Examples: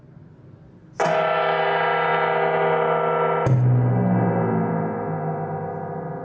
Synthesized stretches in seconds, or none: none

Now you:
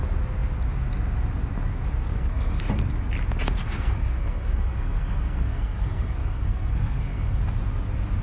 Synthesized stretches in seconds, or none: 2.1-2.6 (codec, SNAC); 3.6-7.4

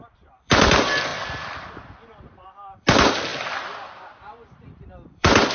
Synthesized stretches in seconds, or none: 0.0-5.5 (vocoder, BigVGAN v2)

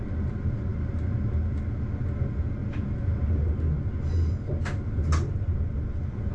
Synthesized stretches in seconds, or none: none

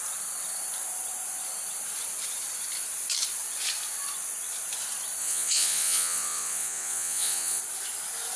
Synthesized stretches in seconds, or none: 5.2-7.6 (vocoder, Vocos)

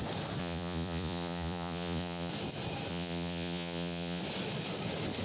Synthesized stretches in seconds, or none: 0.4-2.3 (vocoder, Vocos); 2.9-4.2